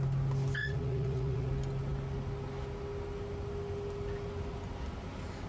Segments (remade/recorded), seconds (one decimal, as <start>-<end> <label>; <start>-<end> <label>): 0.0-0.6 recorded; 0.6-1.5 remade; 1.5-5.5 recorded